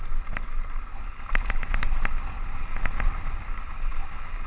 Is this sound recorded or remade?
recorded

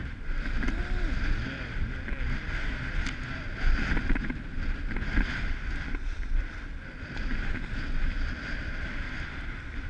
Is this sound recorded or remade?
recorded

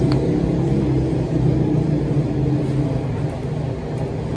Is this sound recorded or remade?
recorded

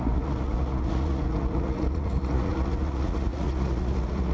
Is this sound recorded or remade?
remade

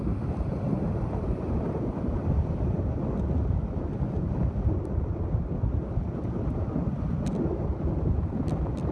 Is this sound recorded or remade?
recorded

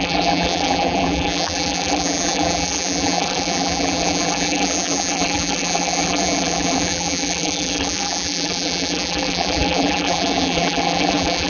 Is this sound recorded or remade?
remade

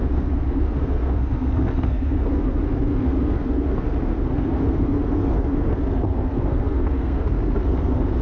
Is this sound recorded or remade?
remade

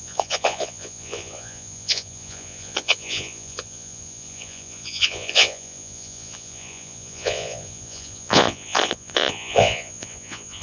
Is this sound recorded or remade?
remade